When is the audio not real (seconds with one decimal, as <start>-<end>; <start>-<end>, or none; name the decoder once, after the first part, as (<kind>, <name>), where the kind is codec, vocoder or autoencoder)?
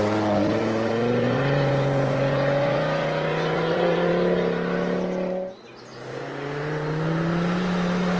0.6-4.1 (vocoder, Vocos)